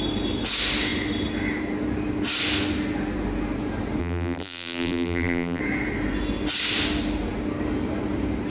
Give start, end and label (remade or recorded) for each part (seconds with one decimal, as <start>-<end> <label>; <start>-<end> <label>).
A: 0.0-4.0 recorded; 4.0-5.6 remade; 5.6-8.5 recorded

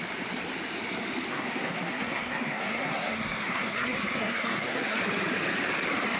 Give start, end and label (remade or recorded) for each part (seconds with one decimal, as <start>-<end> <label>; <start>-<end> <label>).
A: 0.0-1.3 recorded; 1.3-5.0 remade; 5.0-6.2 recorded

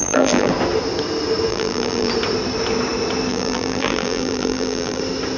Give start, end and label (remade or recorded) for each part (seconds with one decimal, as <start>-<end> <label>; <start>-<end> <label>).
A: 0.0-0.5 remade; 0.5-1.5 recorded; 1.5-2.1 remade; 2.1-3.3 recorded; 3.3-5.0 remade; 5.0-5.4 recorded

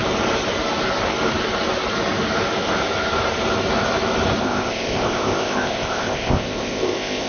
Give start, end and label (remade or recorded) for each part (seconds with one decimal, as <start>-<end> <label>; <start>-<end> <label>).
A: 0.0-4.4 recorded; 4.4-7.3 remade

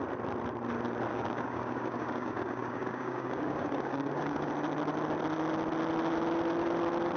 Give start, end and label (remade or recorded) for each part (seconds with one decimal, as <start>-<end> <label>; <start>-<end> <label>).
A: 0.0-1.1 recorded; 1.1-4.5 remade; 4.5-7.2 recorded

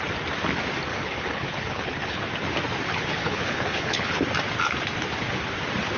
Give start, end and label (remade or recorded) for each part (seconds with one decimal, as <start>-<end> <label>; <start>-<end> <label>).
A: 0.0-0.9 recorded; 0.9-2.2 remade; 2.2-2.9 recorded; 2.9-4.2 remade; 4.2-6.0 recorded

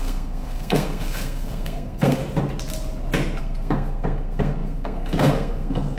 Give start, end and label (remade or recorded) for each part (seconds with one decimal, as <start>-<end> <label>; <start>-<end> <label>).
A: 0.0-2.2 remade; 2.2-3.4 recorded; 3.4-6.0 remade

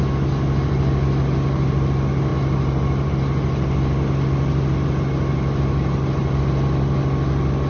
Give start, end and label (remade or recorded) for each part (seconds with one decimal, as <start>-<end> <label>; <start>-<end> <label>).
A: 0.0-7.7 recorded